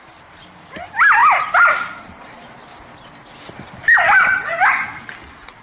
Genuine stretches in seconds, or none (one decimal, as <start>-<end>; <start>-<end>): 0.0-5.6